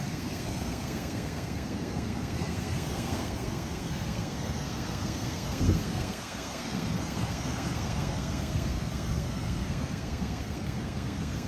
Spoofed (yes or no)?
yes